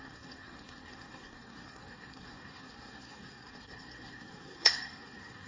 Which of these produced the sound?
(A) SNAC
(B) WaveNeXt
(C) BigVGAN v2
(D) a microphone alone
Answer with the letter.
A